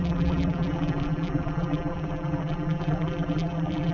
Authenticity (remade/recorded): remade